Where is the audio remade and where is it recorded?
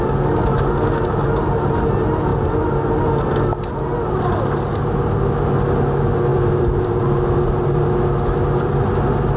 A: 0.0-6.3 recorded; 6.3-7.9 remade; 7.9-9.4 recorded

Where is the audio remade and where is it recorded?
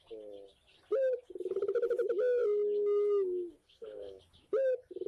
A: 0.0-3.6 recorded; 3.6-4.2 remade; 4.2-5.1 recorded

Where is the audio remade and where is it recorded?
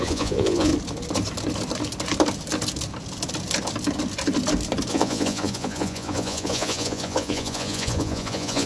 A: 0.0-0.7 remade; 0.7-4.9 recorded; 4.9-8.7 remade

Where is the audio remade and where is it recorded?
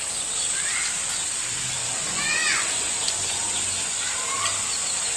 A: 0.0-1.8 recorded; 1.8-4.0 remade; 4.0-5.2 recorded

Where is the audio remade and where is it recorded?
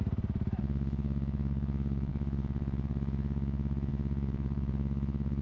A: 0.0-0.6 recorded; 0.6-5.4 remade